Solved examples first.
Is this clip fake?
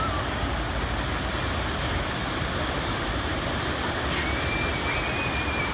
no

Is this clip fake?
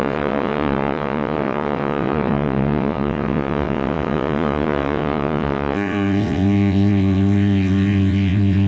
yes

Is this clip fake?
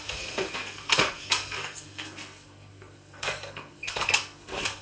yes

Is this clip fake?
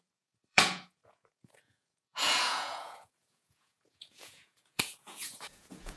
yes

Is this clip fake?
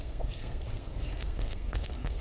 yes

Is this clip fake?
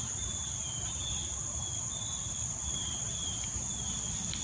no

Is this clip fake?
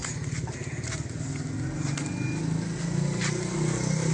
no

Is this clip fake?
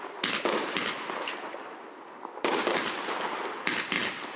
no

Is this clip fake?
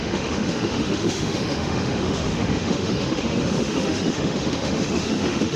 yes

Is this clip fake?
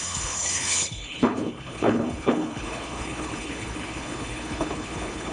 yes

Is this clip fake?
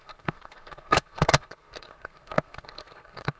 yes